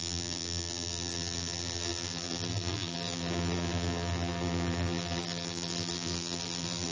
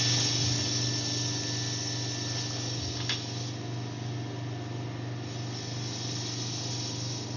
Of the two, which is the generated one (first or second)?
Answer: first